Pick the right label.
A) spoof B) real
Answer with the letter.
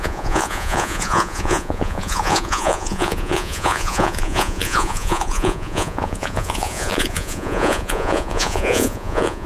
A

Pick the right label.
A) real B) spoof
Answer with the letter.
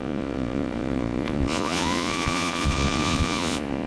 B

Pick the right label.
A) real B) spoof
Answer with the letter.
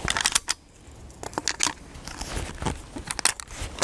A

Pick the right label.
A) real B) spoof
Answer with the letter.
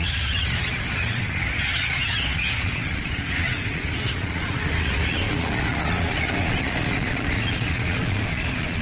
B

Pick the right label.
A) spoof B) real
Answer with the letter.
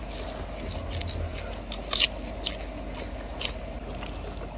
B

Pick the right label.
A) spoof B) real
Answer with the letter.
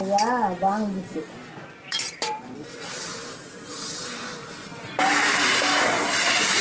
B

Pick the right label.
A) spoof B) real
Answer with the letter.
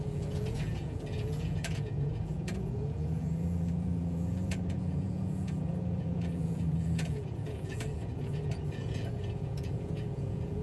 A